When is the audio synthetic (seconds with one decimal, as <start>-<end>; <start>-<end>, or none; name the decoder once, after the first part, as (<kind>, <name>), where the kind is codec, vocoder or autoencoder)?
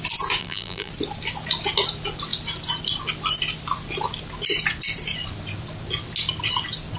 0.4-0.9 (vocoder, BigVGAN v2)